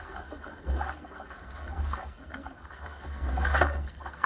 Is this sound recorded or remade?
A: remade